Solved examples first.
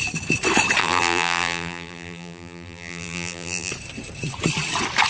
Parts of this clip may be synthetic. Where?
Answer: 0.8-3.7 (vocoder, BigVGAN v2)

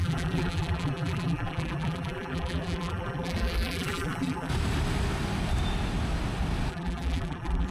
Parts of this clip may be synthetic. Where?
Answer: 0.0-4.5 (vocoder, BigVGAN v2); 6.7-7.7

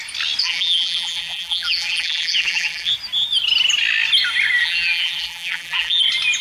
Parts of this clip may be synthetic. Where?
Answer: 0.4-2.9 (vocoder, BigVGAN v2); 4.6-6.0

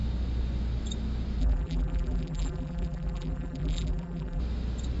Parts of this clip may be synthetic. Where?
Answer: 1.4-4.4 (vocoder, BigVGAN v2)

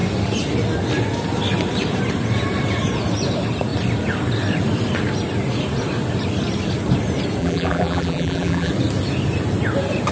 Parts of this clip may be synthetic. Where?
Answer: 7.4-8.7 (vocoder, BigVGAN v2)